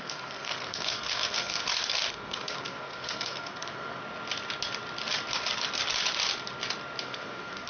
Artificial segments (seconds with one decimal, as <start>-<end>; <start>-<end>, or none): 0.0-1.6; 2.1-4.0; 7.0-7.7